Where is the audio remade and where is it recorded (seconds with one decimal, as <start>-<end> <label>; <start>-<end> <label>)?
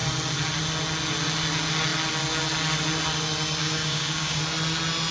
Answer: 0.0-3.6 recorded; 3.6-4.4 remade; 4.4-5.1 recorded